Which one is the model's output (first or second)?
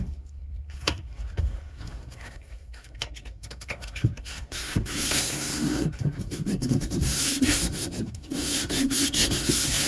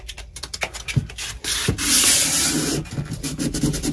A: first